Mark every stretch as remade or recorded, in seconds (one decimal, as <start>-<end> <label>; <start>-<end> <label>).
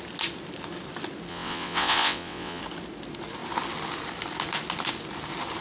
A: 0.0-1.3 recorded; 1.3-2.6 remade; 2.6-5.6 recorded